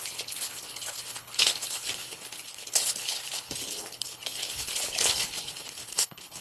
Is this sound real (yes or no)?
no